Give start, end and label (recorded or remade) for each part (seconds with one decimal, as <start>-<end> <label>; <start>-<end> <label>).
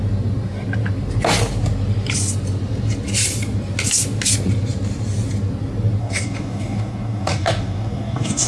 0.0-6.0 recorded; 6.0-8.5 remade